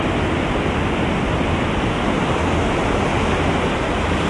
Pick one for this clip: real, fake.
real